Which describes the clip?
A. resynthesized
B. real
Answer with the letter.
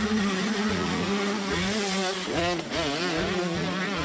A